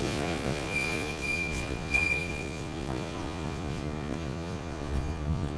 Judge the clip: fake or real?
fake